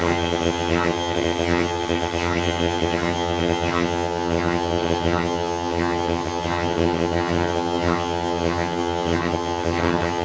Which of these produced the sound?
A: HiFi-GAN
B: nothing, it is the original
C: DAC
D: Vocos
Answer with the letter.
A